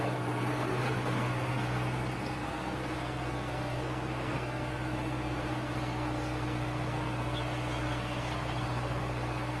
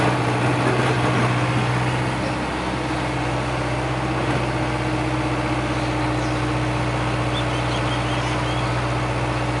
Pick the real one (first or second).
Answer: second